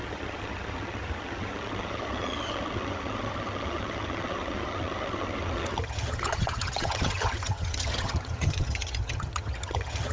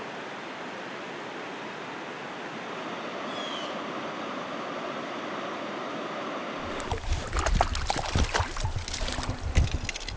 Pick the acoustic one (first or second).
second